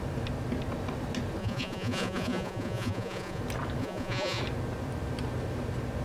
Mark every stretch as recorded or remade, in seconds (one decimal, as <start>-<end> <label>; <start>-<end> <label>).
0.0-1.4 recorded; 1.4-3.4 remade; 3.4-3.8 recorded; 3.8-4.4 remade; 4.4-6.0 recorded